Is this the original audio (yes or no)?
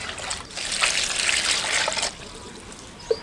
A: yes